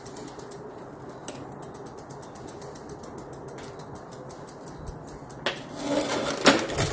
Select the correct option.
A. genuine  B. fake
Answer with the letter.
A